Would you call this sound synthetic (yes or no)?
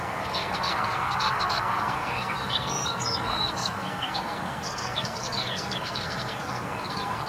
yes